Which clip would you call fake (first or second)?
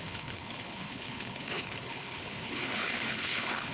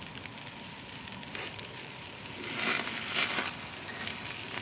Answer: first